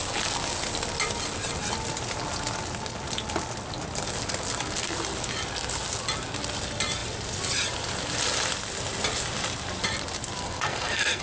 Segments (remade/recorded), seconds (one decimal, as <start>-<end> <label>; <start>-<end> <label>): 0.0-10.4 recorded; 10.4-11.2 remade